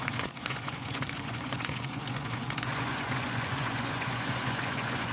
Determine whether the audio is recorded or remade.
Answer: remade